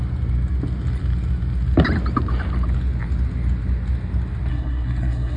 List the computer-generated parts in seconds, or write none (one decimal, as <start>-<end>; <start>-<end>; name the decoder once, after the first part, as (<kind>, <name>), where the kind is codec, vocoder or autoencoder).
4.5-5.4 (codec, SNAC)